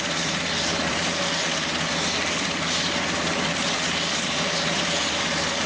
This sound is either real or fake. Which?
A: fake